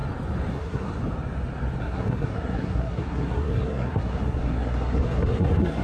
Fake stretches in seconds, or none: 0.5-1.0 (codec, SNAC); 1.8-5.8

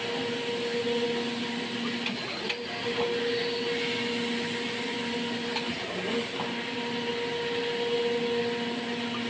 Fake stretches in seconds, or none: none

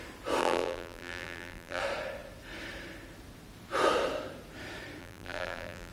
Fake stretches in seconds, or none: 0.4-1.8 (vocoder, BigVGAN v2); 5.0-5.9

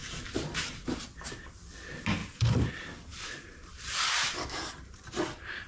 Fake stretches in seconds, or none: 0.0-1.0 (vocoder, BigVGAN v2); 3.1-5.0